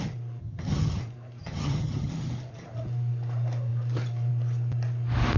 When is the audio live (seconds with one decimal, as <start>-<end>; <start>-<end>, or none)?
0.0-0.4; 1.0-1.4; 2.1-5.4